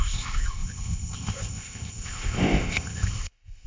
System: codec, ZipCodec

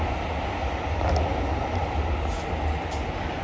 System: none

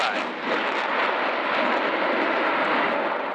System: none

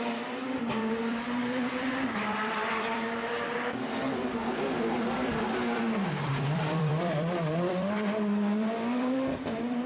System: vocoder, BigVGAN v2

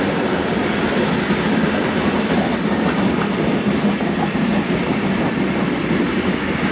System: none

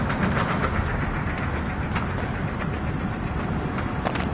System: none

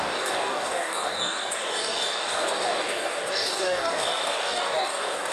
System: codec, DAC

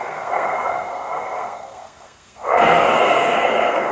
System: codec, SNAC